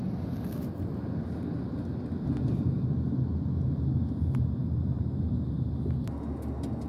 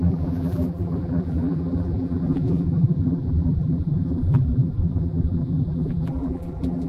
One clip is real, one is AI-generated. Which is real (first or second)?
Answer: first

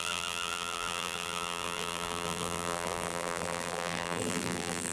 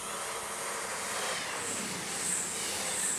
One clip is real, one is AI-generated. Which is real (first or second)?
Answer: second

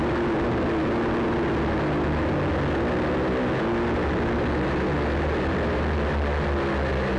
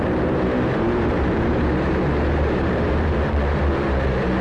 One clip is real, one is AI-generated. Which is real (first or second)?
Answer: first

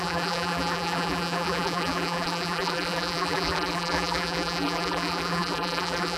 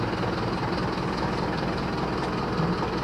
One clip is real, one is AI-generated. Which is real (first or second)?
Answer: second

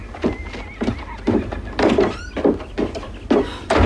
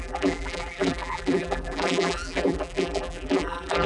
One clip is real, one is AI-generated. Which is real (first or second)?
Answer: first